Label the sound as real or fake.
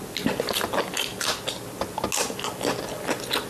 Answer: real